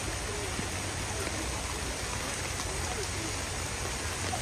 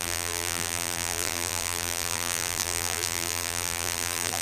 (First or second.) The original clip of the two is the first